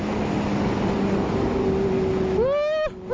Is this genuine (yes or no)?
yes